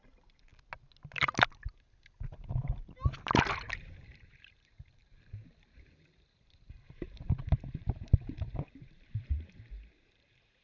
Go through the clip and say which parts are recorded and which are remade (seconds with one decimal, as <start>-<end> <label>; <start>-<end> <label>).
0.0-0.5 remade; 0.5-3.7 recorded; 3.7-10.6 remade

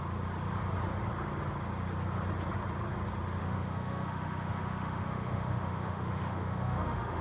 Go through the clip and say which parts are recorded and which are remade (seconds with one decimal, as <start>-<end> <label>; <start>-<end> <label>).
0.0-3.4 recorded; 3.4-7.2 remade

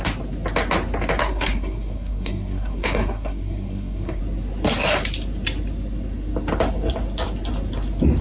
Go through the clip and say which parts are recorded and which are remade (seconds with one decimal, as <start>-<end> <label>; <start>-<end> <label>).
0.0-1.2 recorded; 1.2-4.2 remade; 4.2-8.2 recorded

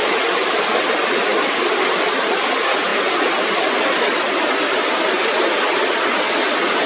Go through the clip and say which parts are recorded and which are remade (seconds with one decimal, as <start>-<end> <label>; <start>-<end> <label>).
0.0-6.9 recorded

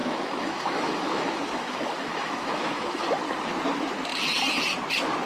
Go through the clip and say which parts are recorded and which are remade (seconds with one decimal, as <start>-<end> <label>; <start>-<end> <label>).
0.0-3.2 remade; 3.2-5.3 recorded

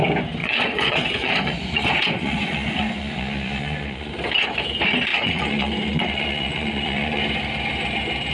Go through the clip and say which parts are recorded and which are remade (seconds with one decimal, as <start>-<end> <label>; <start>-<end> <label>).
0.0-0.4 recorded; 0.4-4.1 remade; 4.1-5.1 recorded; 5.1-7.2 remade; 7.2-8.3 recorded